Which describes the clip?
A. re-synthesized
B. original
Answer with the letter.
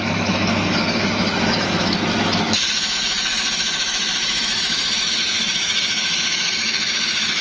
A